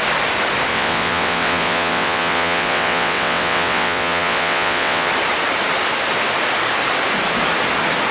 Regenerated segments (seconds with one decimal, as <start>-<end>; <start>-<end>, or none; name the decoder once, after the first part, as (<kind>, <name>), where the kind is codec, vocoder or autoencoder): 0.7-5.1 (vocoder, WaveNeXt)